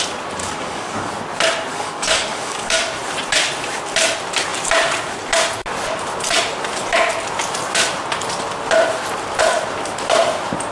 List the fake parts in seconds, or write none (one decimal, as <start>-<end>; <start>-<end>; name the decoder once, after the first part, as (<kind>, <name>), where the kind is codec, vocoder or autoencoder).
0.4-1.1 (codec, DAC); 1.7-2.8